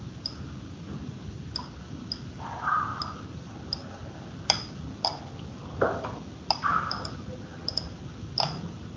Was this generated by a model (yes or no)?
no